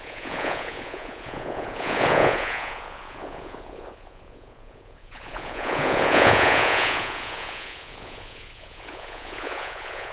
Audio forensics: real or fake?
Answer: fake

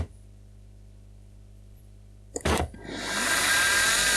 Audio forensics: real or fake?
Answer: fake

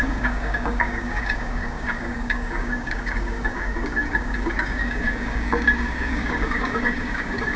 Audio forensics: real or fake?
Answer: fake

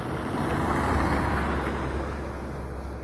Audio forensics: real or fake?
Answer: real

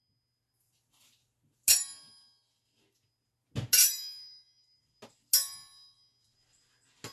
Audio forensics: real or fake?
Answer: real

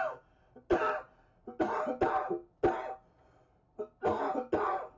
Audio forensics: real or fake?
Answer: real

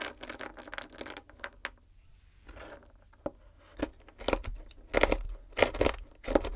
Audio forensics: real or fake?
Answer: real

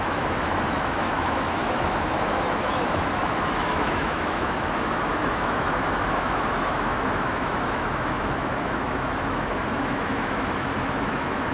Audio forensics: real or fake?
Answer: fake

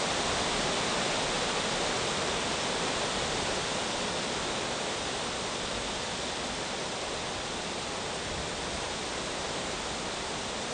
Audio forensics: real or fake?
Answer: real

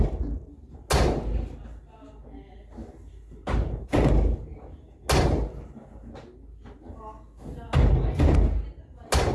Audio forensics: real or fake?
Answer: real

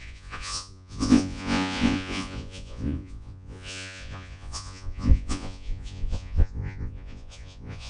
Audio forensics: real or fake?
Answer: fake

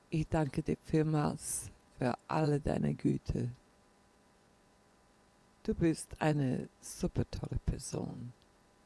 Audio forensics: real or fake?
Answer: fake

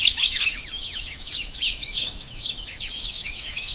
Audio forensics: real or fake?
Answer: fake